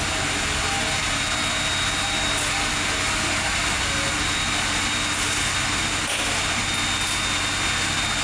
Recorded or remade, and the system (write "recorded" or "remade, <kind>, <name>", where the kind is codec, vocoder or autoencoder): recorded